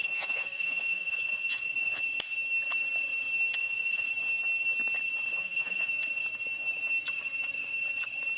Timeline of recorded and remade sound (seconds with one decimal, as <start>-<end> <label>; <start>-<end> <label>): 0.0-2.0 remade; 2.0-3.6 recorded; 3.6-4.1 remade; 4.1-5.3 recorded; 5.3-5.9 remade; 5.9-8.4 recorded